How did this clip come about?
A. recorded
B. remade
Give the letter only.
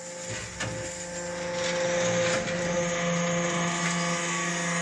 A